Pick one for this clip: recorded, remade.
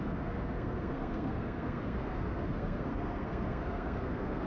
remade